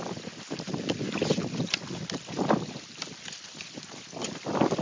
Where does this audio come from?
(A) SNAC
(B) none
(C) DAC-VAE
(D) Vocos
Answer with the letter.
B